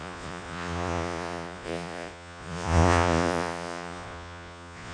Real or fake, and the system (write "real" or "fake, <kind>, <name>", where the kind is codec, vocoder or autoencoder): fake, vocoder, Vocos